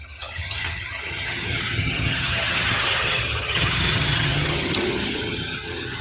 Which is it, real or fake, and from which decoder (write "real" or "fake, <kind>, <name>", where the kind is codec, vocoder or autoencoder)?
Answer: fake, vocoder, HiFi-GAN